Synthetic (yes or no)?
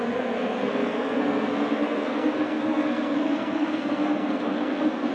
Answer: yes